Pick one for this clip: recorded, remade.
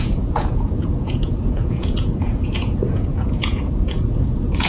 remade